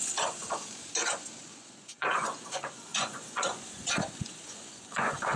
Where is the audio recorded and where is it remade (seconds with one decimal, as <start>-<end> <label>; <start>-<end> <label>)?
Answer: 0.0-5.4 remade